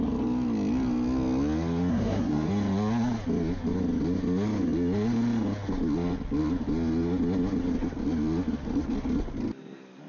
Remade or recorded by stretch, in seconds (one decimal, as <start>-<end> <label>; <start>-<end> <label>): 0.0-1.9 recorded; 1.9-2.5 remade; 2.5-10.1 recorded